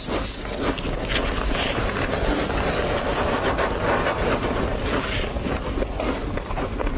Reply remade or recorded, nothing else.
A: recorded